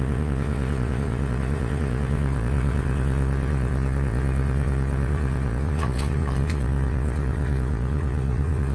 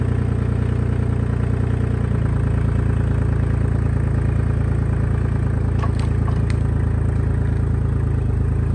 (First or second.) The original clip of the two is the second